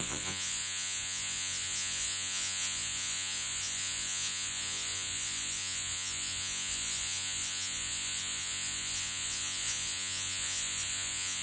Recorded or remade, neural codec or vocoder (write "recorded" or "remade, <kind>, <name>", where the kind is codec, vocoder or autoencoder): remade, vocoder, Vocos